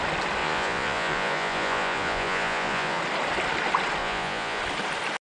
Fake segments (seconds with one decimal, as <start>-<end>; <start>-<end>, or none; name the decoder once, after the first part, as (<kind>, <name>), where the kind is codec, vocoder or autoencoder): 0.4-3.0 (vocoder, Vocos); 4.0-4.6